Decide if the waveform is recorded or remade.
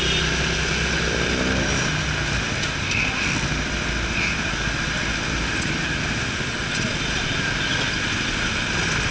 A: recorded